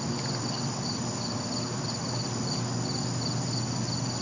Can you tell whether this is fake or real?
real